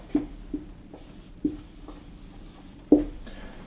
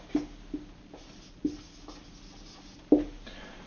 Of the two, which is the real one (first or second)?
second